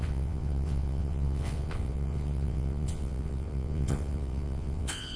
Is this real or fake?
fake